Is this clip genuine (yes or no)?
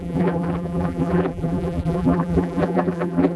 no